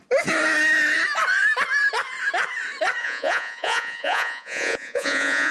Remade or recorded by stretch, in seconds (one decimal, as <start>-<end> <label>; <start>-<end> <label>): 0.0-3.0 recorded; 3.0-5.5 remade